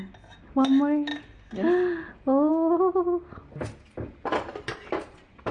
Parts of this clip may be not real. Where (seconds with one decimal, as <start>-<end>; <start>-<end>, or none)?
4.5-5.1